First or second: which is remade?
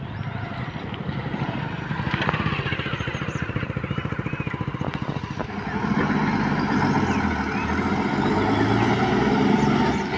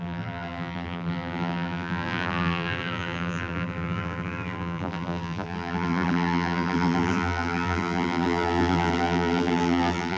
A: second